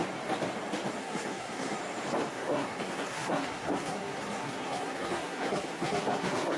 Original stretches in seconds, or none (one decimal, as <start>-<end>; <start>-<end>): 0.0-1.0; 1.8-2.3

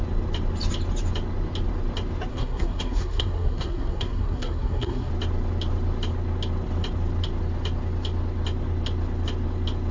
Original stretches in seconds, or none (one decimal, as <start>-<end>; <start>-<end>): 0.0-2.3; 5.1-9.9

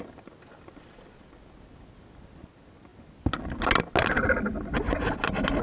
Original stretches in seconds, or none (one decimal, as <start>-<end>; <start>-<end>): 0.0-5.6

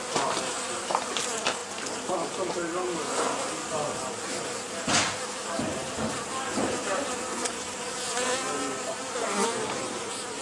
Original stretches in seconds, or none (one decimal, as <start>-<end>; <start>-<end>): 0.0-10.4

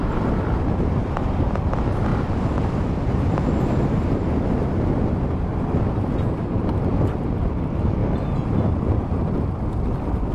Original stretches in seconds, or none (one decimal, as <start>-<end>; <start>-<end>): 0.0-10.3

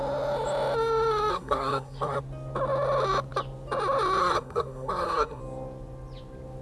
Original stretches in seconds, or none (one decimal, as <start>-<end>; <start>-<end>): 0.0-1.3; 2.2-4.2; 5.4-6.6